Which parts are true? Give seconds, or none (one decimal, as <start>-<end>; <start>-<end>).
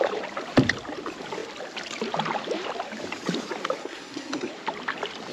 0.0-3.8; 4.5-5.3